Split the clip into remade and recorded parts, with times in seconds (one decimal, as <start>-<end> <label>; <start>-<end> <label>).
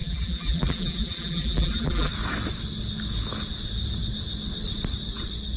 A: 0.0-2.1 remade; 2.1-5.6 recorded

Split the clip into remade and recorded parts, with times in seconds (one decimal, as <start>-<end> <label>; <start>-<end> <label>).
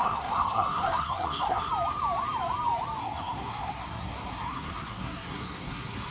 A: 0.0-1.7 remade; 1.7-3.0 recorded; 3.0-6.1 remade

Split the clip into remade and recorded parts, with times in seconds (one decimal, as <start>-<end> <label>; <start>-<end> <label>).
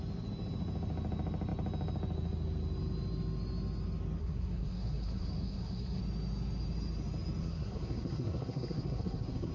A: 0.0-4.2 recorded; 4.2-6.0 remade; 6.0-7.4 recorded; 7.4-9.5 remade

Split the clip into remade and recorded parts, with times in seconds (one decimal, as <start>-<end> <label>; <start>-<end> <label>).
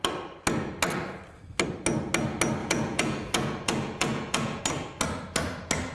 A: 0.0-2.6 recorded; 2.6-4.6 remade; 4.6-5.9 recorded